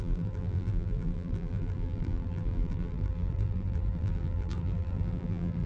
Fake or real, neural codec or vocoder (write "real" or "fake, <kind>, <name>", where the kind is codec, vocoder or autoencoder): fake, vocoder, BigVGAN v2